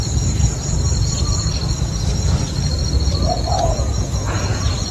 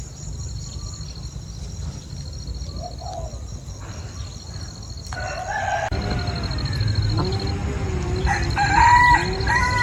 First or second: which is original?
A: second